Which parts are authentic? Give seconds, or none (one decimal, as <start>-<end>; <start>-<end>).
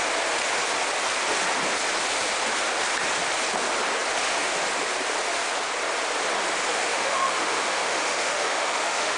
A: 0.0-6.7